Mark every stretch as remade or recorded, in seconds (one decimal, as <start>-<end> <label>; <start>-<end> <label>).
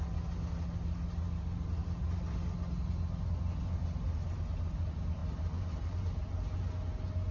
0.0-7.3 recorded